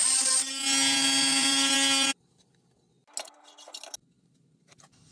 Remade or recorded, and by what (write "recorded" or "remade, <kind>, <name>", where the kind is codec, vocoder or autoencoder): recorded